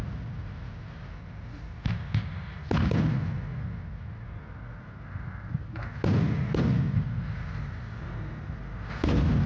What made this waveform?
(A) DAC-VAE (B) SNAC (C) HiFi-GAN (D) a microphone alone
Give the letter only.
D